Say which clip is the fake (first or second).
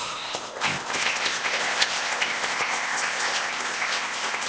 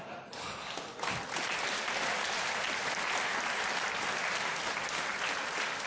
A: first